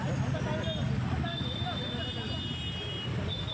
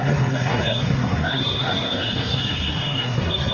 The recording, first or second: first